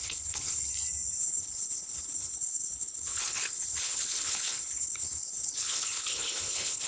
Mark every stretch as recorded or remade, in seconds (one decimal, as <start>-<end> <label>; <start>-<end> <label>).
0.0-0.6 remade; 0.6-1.2 recorded; 1.2-6.9 remade